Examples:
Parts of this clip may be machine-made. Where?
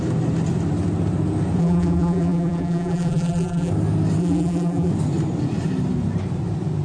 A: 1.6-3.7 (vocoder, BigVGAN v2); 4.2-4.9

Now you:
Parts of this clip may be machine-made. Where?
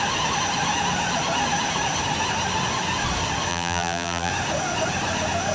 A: 3.5-4.3 (vocoder, BigVGAN v2)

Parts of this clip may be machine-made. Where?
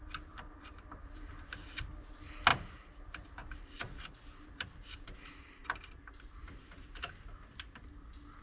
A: 3.4-4.6 (vocoder, BigVGAN v2); 5.6-7.0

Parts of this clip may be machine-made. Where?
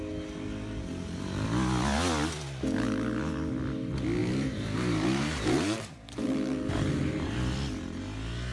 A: 4.2-7.3 (vocoder, BigVGAN v2)